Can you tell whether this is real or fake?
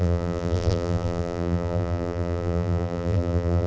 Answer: fake